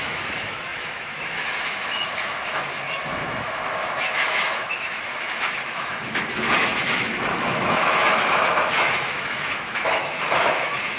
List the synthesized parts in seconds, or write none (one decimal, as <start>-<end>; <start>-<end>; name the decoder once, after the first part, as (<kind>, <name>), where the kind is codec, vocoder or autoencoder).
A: 0.0-11.0 (autoencoder, DAC-VAE)